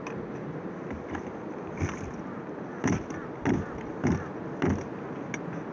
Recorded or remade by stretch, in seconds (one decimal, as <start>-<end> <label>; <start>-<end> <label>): 0.0-5.7 recorded